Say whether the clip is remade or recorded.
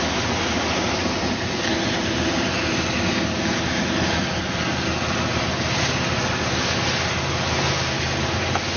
recorded